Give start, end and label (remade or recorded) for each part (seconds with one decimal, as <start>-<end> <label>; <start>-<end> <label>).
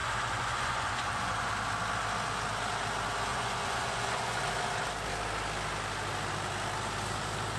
0.0-1.5 remade; 1.5-3.3 recorded; 3.3-4.4 remade; 4.4-7.6 recorded